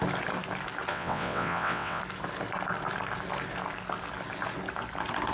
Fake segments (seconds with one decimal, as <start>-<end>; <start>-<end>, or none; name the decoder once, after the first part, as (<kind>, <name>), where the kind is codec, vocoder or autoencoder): 0.9-2.0 (vocoder, WaveNeXt)